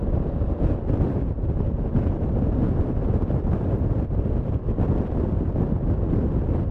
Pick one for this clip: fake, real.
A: real